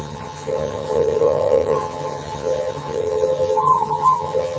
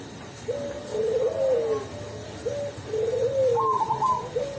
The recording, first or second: second